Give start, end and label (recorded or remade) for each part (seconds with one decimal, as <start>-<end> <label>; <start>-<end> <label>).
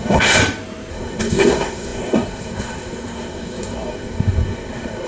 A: 0.0-0.4 remade; 0.4-0.9 recorded; 0.9-5.1 remade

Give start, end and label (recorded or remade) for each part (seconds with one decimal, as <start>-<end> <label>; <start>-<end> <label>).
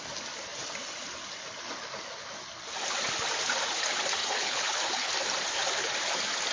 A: 0.0-4.2 recorded; 4.2-5.1 remade; 5.1-6.5 recorded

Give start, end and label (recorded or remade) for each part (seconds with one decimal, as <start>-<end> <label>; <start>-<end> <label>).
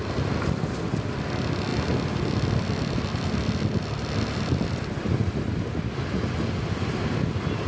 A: 0.0-1.7 recorded; 1.7-5.5 remade; 5.5-7.7 recorded